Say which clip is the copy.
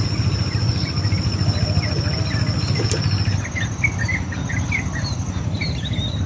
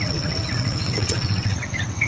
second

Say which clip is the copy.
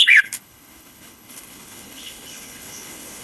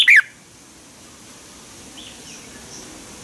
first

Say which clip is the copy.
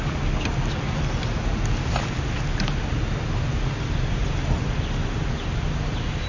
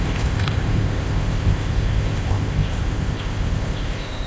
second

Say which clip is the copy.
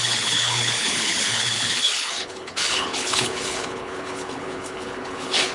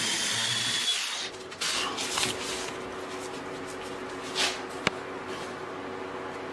first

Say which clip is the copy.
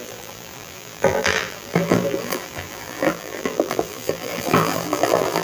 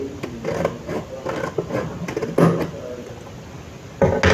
first